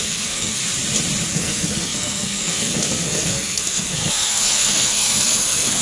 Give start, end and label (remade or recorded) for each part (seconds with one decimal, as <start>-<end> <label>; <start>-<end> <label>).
0.0-0.6 remade; 0.6-1.3 recorded; 1.3-5.8 remade